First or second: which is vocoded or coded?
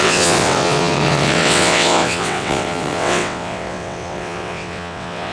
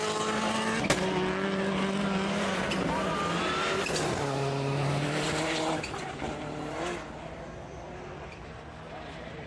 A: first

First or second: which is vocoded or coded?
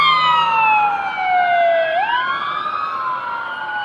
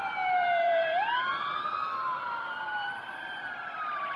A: second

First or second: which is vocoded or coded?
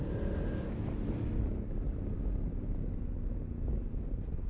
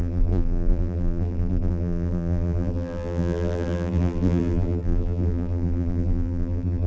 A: second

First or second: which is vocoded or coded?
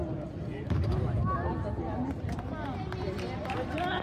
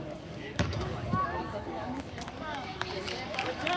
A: second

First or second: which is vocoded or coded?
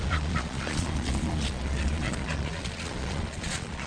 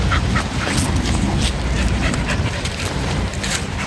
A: first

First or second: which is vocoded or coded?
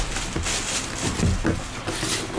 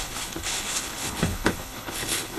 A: second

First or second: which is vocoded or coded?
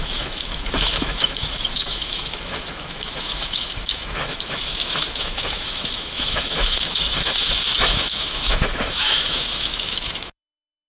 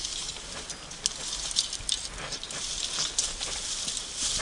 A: first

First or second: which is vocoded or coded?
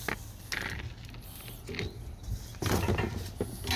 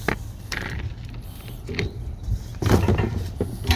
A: second